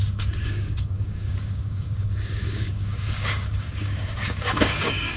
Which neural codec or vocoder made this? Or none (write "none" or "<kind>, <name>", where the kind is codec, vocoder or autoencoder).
codec, DAC